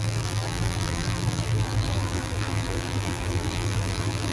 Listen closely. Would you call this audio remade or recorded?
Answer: remade